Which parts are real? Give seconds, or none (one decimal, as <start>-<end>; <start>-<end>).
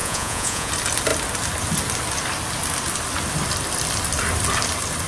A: 0.7-5.1